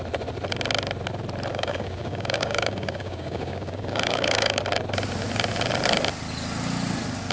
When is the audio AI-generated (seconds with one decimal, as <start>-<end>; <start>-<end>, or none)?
1.5-4.6